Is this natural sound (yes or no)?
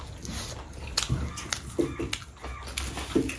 yes